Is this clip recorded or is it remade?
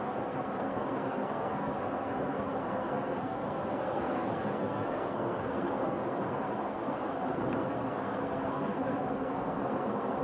remade